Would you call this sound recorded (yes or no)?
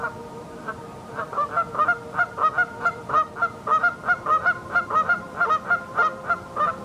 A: no